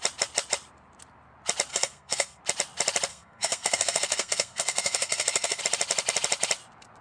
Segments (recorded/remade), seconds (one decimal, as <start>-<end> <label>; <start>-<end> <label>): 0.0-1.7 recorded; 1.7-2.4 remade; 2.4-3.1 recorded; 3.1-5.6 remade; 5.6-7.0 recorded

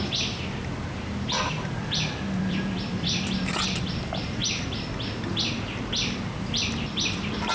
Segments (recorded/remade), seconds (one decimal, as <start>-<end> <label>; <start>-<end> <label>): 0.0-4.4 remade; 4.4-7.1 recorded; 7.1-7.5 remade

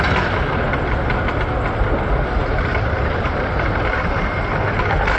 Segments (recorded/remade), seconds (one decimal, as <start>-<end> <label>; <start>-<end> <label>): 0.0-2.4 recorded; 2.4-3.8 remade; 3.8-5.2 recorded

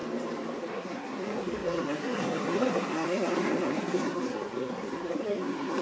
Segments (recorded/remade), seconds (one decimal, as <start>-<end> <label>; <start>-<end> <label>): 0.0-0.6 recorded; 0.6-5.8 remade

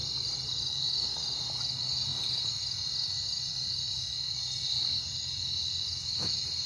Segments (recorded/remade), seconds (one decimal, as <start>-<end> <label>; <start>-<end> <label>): 0.0-6.7 recorded

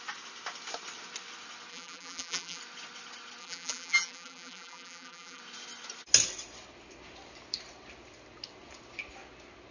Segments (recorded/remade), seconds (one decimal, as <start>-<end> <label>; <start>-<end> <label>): 0.0-1.7 recorded; 1.7-2.6 remade; 2.6-3.4 recorded; 3.4-5.4 remade; 5.4-9.7 recorded

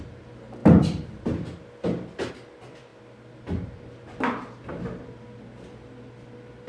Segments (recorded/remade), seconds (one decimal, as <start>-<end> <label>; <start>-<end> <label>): 0.0-0.6 recorded; 0.6-2.3 remade; 2.3-2.9 recorded; 2.9-3.7 remade; 3.7-6.7 recorded

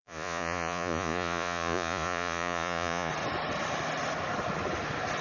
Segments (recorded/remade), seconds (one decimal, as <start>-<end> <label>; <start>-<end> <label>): 0.0-3.1 remade; 3.1-5.2 recorded